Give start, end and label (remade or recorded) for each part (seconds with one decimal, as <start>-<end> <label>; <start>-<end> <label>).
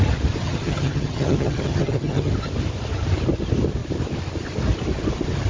0.0-0.4 recorded; 0.4-2.3 remade; 2.3-5.5 recorded